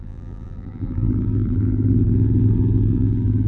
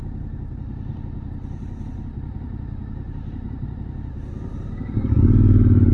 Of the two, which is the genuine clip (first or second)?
second